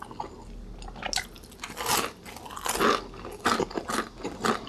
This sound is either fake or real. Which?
real